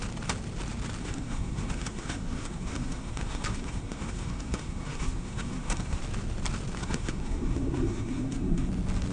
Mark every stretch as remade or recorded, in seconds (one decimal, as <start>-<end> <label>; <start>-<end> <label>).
0.0-1.0 recorded; 1.0-6.0 remade; 6.0-6.8 recorded; 6.8-8.7 remade; 8.7-9.1 recorded